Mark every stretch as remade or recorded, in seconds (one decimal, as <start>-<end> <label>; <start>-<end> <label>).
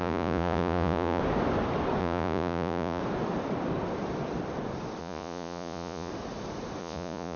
0.0-1.2 remade; 1.2-2.0 recorded; 2.0-3.0 remade; 3.0-5.0 recorded; 5.0-6.1 remade; 6.1-6.8 recorded; 6.8-7.4 remade